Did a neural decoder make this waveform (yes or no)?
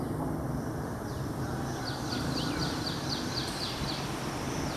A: yes